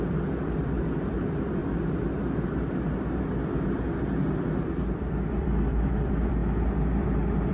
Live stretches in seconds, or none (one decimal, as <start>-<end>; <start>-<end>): 1.6-4.6; 6.4-6.9